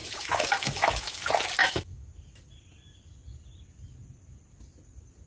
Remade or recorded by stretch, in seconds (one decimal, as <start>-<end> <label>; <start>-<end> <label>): 0.0-1.2 remade; 1.2-1.6 recorded; 1.6-2.1 remade; 2.1-5.3 recorded